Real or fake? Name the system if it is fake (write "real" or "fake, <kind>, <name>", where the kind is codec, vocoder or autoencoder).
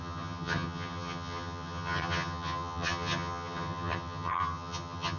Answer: fake, vocoder, HiFi-GAN